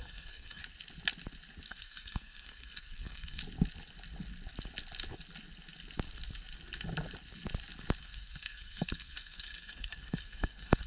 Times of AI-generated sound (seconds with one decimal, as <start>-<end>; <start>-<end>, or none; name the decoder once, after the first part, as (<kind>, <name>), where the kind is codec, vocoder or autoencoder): 0.0-0.6 (codec, SNAC); 1.7-3.4; 8.0-10.9